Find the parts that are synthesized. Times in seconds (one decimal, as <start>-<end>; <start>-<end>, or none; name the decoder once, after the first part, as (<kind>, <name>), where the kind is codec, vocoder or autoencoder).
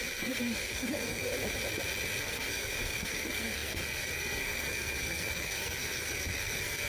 0.0-1.3 (codec, SNAC); 2.2-6.9